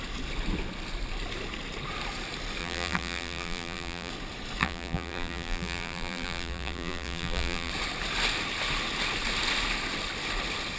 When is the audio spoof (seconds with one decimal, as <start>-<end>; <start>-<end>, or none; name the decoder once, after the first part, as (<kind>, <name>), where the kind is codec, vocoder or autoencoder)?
2.6-4.1 (vocoder, BigVGAN v2); 4.6-7.7